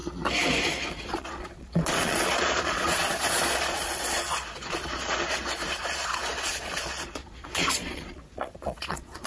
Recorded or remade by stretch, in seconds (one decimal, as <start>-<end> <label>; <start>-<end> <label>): 0.0-0.9 recorded; 0.9-9.3 remade

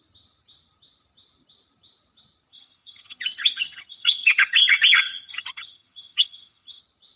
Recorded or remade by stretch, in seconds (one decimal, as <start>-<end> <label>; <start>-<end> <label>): 0.0-2.5 recorded; 2.5-6.8 remade; 6.8-7.2 recorded